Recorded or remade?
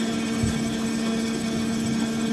remade